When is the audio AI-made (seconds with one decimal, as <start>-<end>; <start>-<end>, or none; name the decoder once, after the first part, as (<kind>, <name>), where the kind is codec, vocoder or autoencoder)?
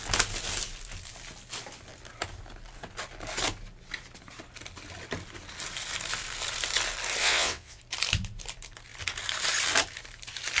7.2-7.8 (vocoder, WaveNeXt)